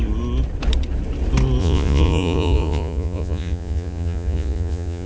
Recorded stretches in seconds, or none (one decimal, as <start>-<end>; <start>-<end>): 0.0-1.6